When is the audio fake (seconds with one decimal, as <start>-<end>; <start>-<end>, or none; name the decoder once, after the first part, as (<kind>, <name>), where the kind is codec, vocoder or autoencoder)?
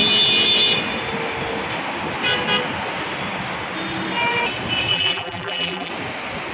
4.9-5.9 (vocoder, BigVGAN v2)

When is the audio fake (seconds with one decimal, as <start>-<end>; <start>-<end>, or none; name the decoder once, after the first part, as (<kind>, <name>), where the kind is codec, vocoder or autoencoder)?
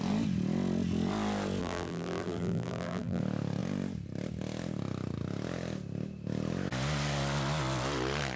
1.6-3.2 (vocoder, BigVGAN v2)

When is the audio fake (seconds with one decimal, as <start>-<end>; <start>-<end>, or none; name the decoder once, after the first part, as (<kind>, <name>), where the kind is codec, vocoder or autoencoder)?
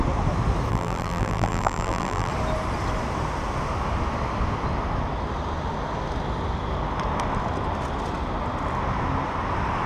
0.7-2.3 (vocoder, BigVGAN v2)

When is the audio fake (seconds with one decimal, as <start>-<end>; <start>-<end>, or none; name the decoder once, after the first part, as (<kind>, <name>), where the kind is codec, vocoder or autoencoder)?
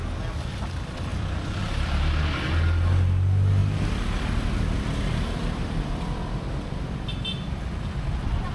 1.1-2.2 (vocoder, BigVGAN v2); 3.6-6.9